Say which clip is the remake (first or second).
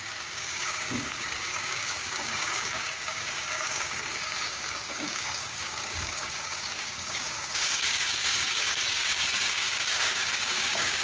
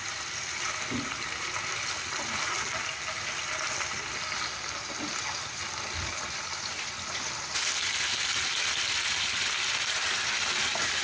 first